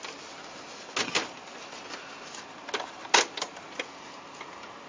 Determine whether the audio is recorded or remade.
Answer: recorded